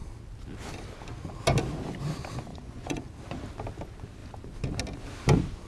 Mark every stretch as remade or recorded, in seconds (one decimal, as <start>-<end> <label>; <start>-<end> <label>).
0.0-2.5 recorded; 2.5-3.0 remade; 3.0-5.7 recorded